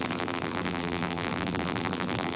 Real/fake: fake